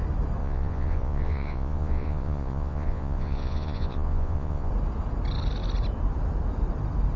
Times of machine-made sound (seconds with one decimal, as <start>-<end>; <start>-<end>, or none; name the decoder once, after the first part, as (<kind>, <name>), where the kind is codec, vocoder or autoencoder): 0.4-4.7 (vocoder, Vocos)